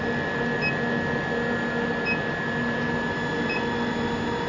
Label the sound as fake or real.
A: real